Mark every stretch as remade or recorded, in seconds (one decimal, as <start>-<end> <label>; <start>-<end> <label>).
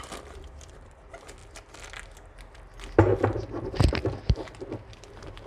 0.0-1.4 remade; 1.4-3.6 recorded; 3.6-5.5 remade